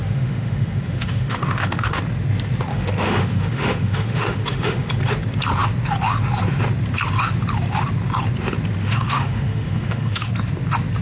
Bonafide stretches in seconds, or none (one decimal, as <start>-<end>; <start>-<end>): 2.0-2.7; 4.9-8.8; 10.3-11.0